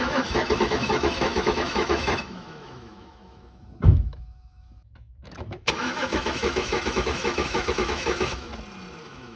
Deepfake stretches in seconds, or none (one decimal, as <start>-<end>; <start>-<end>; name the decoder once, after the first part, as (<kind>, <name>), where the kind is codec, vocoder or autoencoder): 0.0-8.5 (autoencoder, DAC-VAE); 9.0-9.4